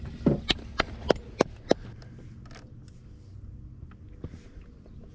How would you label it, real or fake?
real